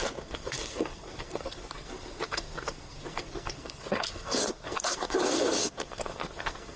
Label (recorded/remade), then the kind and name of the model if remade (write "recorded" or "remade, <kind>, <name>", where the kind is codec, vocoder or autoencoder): remade, codec, SNAC